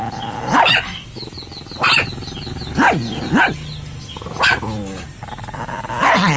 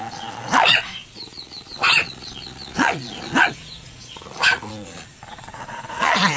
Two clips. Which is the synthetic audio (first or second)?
second